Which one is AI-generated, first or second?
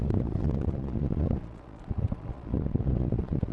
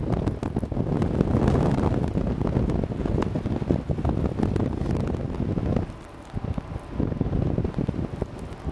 first